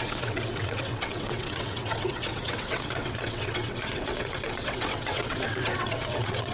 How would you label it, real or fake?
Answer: fake